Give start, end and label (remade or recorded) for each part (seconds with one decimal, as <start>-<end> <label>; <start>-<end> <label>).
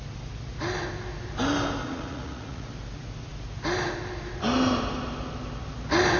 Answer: 0.0-1.8 recorded; 1.8-2.7 remade; 2.7-6.2 recorded